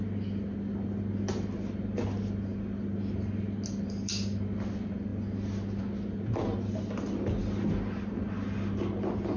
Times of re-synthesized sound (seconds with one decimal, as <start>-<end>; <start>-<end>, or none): none